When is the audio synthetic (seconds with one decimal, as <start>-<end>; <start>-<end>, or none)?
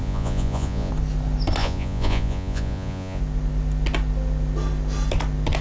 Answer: 0.0-0.9; 1.6-3.2